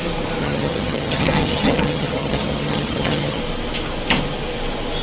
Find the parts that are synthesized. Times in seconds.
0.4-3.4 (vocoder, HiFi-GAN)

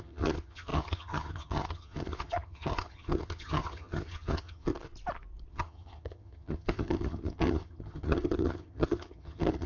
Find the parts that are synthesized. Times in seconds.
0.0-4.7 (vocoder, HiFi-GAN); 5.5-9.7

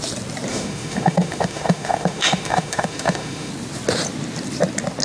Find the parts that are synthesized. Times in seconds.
0.5-3.5 (autoencoder, DAC-VAE)

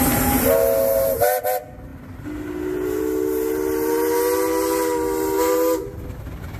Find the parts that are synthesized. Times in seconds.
none